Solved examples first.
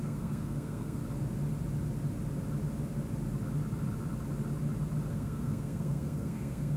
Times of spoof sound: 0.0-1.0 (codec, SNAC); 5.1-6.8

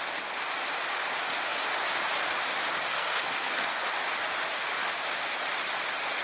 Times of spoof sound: 2.9-3.8 (codec, SNAC)

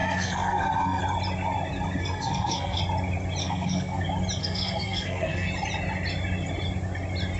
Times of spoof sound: 0.0-1.0 (codec, SNAC); 2.0-2.8; 3.4-4.0; 4.4-5.5

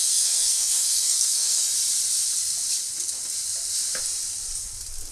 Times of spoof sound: 0.0-1.7 (codec, SNAC)